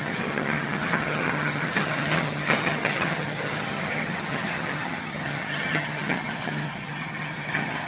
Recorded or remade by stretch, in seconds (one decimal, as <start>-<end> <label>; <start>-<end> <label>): 0.0-7.9 remade